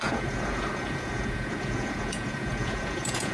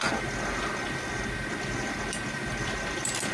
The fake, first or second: first